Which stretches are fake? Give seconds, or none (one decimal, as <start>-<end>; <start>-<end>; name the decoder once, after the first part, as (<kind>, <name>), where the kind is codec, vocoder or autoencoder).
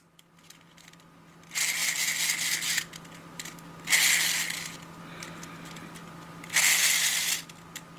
none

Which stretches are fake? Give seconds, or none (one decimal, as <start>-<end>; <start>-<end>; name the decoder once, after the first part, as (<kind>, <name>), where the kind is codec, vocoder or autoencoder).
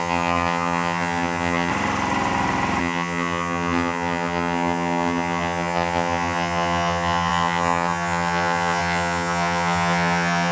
0.0-1.7 (vocoder, HiFi-GAN); 2.8-10.5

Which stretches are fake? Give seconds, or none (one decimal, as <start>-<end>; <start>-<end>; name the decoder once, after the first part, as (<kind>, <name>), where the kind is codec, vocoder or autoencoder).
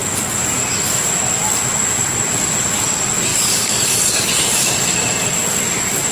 3.3-4.3 (codec, DAC)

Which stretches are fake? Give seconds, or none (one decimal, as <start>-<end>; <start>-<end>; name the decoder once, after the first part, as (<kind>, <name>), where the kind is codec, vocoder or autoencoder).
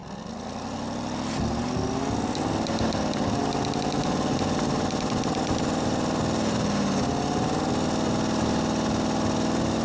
none